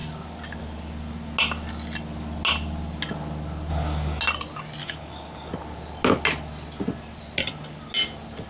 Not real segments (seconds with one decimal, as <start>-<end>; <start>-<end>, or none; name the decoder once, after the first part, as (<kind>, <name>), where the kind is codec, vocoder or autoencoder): 3.7-4.2 (codec, DAC); 4.8-5.5